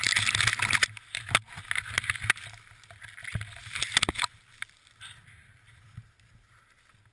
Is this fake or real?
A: real